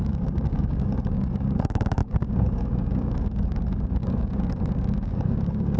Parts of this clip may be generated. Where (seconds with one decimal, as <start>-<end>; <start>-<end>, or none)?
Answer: 0.0-5.8